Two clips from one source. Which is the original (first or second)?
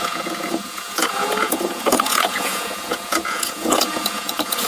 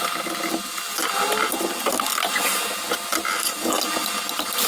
second